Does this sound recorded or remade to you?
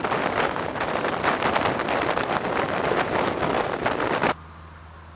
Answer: remade